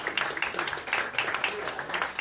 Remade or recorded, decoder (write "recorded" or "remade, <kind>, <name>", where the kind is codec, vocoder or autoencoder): recorded